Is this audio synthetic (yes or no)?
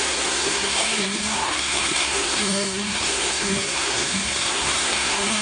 yes